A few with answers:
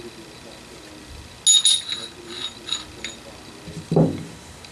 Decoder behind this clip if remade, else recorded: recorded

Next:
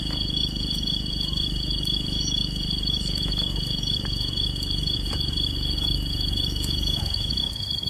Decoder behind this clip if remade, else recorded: remade, autoencoder, DAC-VAE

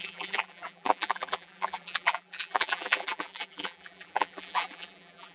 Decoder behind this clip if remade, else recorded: remade, vocoder, BigVGAN v2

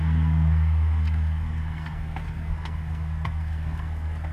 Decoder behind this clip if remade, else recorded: remade, codec, SNAC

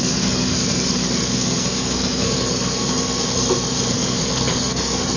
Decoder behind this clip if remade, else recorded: remade, codec, SNAC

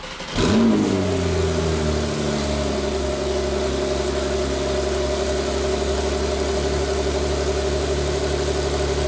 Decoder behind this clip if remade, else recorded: recorded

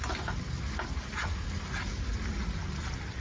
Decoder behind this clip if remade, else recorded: recorded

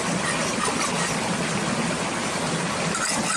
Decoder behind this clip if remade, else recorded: recorded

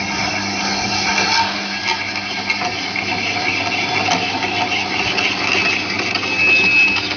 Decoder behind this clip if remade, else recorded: recorded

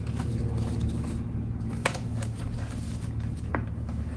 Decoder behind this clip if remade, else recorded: remade, codec, DAC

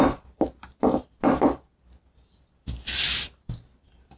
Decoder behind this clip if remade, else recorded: recorded